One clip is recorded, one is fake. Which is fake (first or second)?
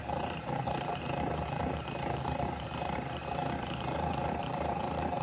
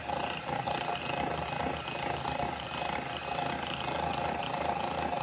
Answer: first